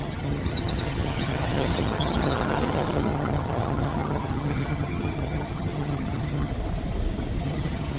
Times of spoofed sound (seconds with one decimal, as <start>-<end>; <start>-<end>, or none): 0.0-6.5; 7.4-8.0